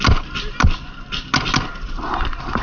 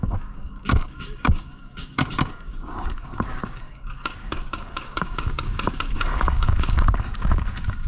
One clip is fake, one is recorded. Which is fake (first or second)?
second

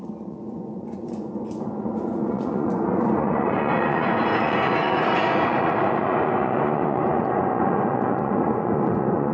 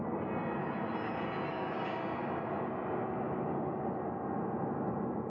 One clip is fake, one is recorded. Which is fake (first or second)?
first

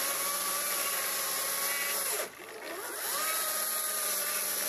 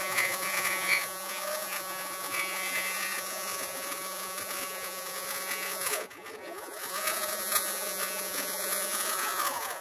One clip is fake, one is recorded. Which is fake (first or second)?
second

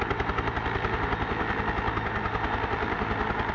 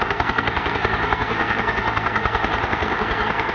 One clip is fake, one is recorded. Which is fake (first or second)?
second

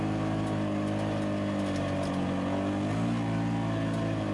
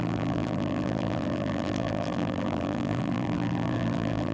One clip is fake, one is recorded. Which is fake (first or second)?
second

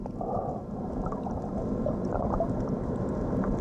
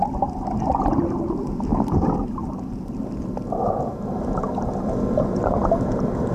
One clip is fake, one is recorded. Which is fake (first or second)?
first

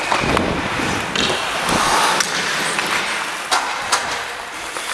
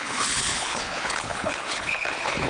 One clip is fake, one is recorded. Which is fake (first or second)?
second